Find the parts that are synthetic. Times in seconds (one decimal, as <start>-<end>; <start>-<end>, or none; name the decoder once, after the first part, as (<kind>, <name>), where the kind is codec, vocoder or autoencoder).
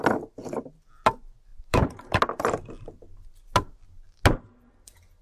1.5-2.2 (vocoder, BigVGAN v2)